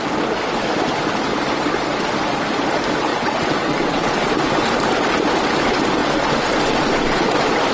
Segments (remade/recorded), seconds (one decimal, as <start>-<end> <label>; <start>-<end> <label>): 0.0-3.1 recorded; 3.1-4.1 remade; 4.1-7.7 recorded